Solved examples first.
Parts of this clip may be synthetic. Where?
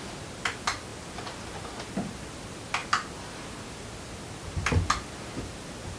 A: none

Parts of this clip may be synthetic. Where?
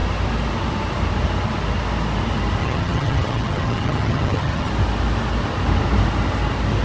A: 2.6-4.7 (vocoder, HiFi-GAN)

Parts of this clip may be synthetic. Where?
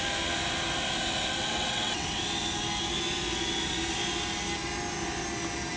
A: 1.4-2.2 (vocoder, WaveNeXt)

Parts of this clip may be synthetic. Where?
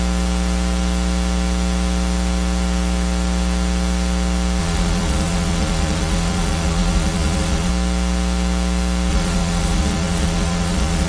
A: 4.6-7.7 (vocoder, Vocos); 9.1-11.1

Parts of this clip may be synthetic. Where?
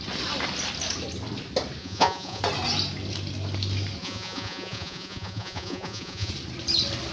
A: 1.8-2.4 (vocoder, Vocos); 4.0-6.3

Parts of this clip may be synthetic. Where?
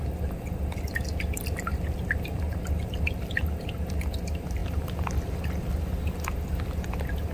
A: none